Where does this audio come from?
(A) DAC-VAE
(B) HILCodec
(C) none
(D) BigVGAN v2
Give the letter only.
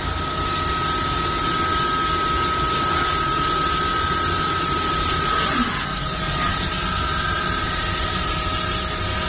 C